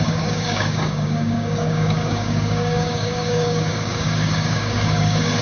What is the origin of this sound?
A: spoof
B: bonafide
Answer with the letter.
A